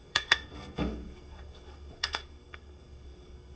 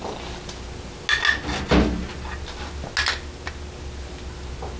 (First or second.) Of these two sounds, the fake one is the first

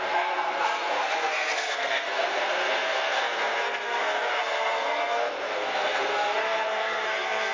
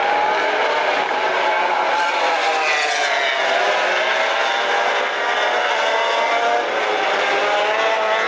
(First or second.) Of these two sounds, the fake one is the first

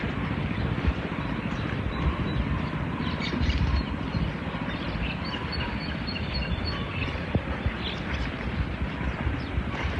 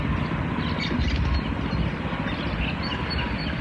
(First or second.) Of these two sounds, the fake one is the first